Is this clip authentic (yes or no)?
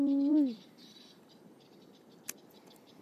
no